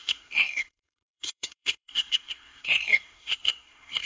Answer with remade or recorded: remade